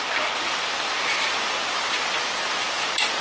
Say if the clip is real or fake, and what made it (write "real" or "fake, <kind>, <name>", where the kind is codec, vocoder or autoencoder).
real